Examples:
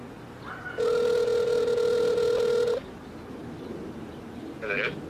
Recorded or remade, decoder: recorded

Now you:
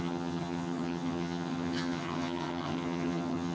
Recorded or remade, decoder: remade, vocoder, HiFi-GAN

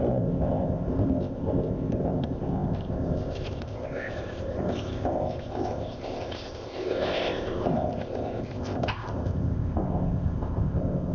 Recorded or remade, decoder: remade, codec, ZipCodec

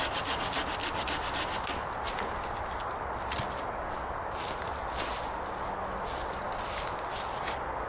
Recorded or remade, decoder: recorded